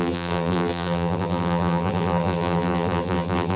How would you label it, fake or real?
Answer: fake